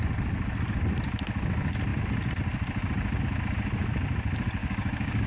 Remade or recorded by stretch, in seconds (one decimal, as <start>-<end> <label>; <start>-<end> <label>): 0.0-4.6 recorded; 4.6-5.3 remade

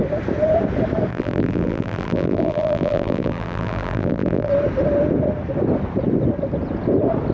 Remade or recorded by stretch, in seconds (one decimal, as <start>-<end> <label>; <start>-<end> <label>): 0.0-1.1 recorded; 1.1-4.5 remade; 4.5-7.3 recorded

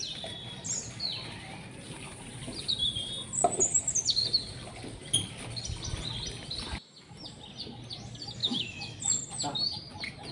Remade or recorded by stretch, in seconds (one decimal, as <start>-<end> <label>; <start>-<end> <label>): 0.0-8.4 recorded; 8.4-9.0 remade; 9.0-10.3 recorded

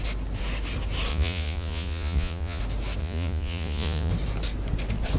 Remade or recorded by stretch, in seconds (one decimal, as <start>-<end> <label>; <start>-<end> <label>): 0.0-1.1 recorded; 1.1-2.6 remade; 2.6-3.0 recorded; 3.0-4.1 remade; 4.1-5.2 recorded

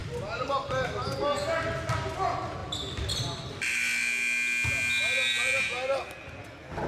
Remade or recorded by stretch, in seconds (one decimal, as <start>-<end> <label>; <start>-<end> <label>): 0.0-6.9 recorded

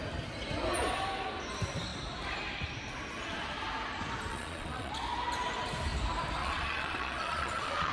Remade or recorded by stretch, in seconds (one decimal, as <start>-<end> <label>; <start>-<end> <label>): 0.0-4.3 recorded; 4.3-4.9 remade; 4.9-6.4 recorded; 6.4-7.9 remade